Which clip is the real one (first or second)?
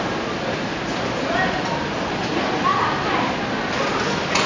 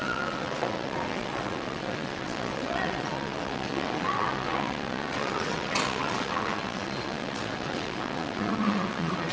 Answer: first